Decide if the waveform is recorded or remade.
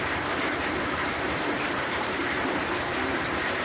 remade